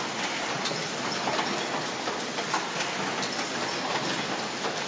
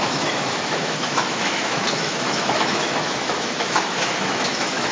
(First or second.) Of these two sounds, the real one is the first